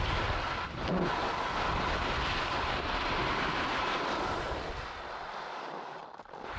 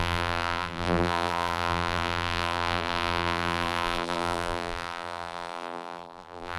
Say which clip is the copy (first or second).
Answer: second